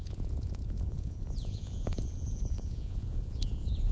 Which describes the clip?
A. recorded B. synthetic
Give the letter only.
B